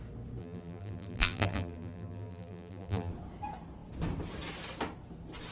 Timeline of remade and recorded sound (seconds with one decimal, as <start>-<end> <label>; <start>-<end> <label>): 0.0-0.4 recorded; 0.4-3.1 remade; 3.1-5.5 recorded